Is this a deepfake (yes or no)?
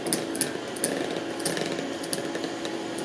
no